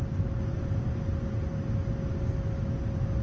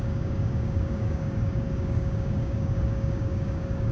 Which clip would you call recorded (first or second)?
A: first